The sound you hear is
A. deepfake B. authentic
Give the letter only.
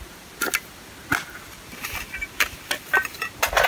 B